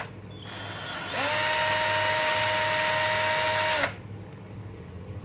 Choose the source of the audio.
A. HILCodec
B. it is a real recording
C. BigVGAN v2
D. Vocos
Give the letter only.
B